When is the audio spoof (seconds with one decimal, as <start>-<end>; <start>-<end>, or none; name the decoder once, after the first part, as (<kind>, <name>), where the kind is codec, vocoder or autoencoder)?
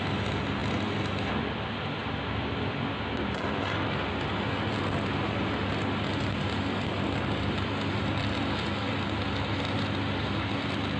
none